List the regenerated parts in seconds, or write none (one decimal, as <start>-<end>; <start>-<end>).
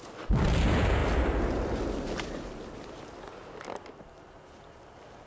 none